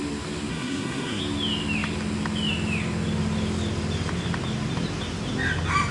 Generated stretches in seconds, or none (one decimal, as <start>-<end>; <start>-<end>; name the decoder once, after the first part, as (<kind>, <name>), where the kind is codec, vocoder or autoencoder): 0.5-1.2 (codec, SNAC)